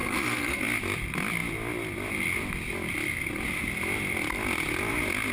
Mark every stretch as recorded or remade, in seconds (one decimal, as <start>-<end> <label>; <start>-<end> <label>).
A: 0.0-0.6 remade; 0.6-5.3 recorded